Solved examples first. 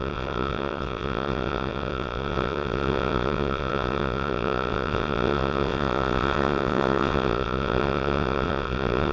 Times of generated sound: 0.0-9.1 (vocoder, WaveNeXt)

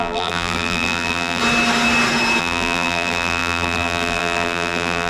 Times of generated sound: 0.0-1.4 (vocoder, BigVGAN v2); 2.4-5.1